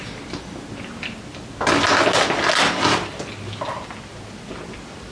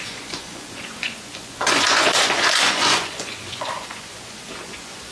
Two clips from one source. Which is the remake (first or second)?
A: second